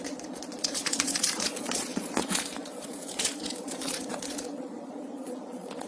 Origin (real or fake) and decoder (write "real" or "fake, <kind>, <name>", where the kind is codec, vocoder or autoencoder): fake, vocoder, Vocos